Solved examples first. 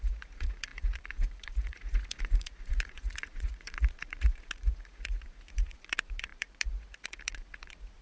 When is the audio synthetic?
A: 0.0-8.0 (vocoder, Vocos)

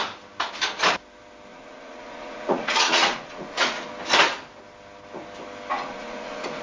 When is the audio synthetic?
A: 1.5-3.9 (vocoder, Vocos); 5.7-6.6

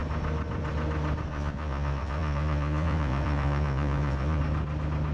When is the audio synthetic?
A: 1.3-4.4 (vocoder, Vocos)

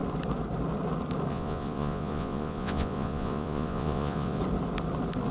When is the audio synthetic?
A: 1.3-4.4 (vocoder, Vocos)

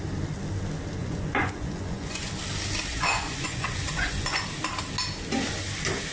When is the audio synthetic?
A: 1.0-2.3 (vocoder, Vocos); 2.9-4.4

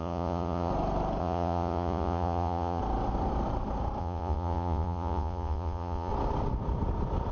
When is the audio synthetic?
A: 0.0-0.7 (vocoder, Vocos); 1.2-2.8; 4.0-6.1

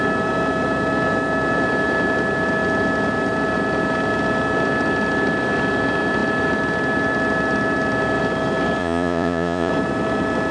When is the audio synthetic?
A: 8.8-9.7 (vocoder, Vocos)

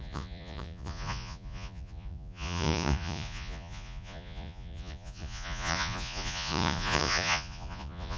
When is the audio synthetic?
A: 0.0-8.2 (vocoder, Vocos)